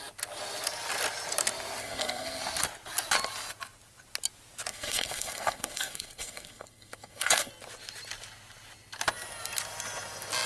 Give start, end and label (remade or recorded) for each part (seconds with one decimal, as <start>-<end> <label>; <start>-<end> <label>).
0.0-1.8 recorded; 1.8-2.4 remade; 2.4-4.7 recorded; 4.7-7.5 remade; 7.5-10.5 recorded